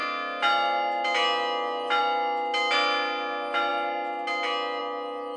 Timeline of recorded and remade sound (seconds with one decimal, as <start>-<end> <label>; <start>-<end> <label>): 0.0-5.4 recorded